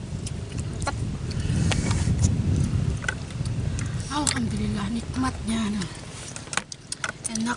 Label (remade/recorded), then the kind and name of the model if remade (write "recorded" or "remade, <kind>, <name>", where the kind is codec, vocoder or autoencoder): recorded